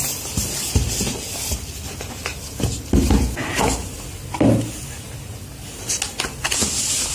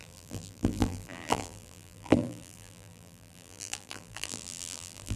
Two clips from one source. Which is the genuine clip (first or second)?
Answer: first